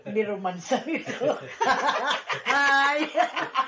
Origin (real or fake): real